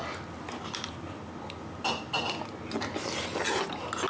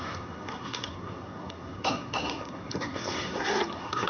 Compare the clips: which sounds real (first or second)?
first